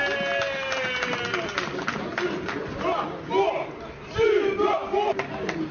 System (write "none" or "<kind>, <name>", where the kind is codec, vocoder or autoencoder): none